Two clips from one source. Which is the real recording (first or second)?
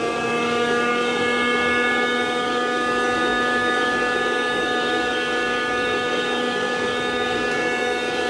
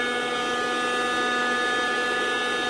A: second